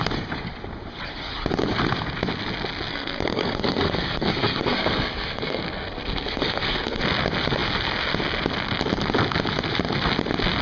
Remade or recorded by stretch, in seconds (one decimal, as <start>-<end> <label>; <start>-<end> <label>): 0.0-2.9 recorded; 2.9-7.0 remade; 7.0-10.6 recorded